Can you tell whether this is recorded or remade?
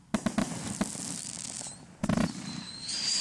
recorded